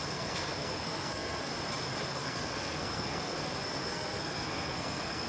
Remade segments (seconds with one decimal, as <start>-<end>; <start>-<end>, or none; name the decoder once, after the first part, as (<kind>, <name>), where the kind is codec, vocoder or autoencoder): 0.0-1.5 (codec, SNAC); 2.1-5.3